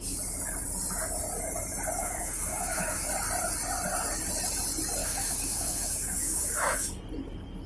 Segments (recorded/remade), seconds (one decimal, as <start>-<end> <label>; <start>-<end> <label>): 0.0-2.0 recorded; 2.0-3.1 remade; 3.1-5.0 recorded; 5.0-6.9 remade; 6.9-7.7 recorded